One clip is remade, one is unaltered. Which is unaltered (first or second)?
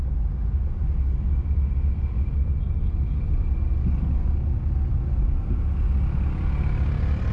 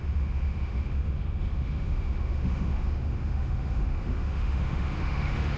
first